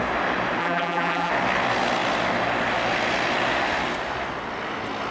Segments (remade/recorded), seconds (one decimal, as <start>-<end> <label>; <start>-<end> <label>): 0.0-0.6 recorded; 0.6-1.3 remade; 1.3-5.1 recorded